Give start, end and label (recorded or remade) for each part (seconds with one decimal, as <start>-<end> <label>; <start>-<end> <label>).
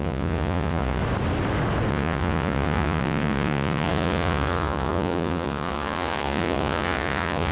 0.0-1.0 remade; 1.0-1.9 recorded; 1.9-7.5 remade